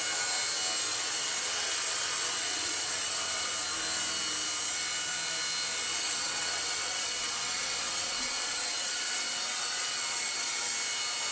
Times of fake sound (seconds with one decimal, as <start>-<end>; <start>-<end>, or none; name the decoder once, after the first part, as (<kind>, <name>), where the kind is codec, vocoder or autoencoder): 0.9-3.5 (vocoder, WaveNeXt); 5.9-10.7